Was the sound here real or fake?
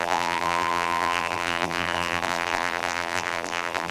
fake